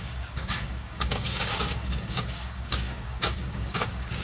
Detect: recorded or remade remade